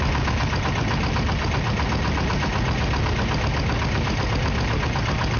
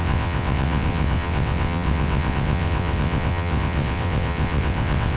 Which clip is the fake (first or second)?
second